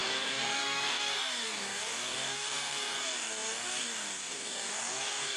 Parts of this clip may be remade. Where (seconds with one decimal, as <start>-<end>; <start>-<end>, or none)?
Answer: 0.0-5.4